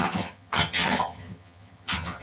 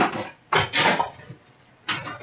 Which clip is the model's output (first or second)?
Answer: first